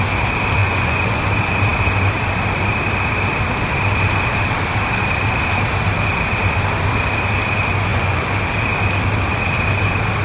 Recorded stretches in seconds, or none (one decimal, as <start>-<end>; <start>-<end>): 0.0-0.6; 1.2-7.9; 8.4-10.2